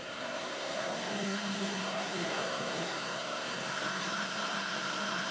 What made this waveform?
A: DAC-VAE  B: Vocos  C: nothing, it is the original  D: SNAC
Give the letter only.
D